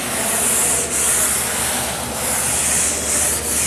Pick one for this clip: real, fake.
real